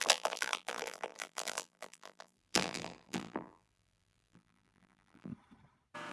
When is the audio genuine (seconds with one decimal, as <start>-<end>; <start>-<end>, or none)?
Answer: 5.3-6.1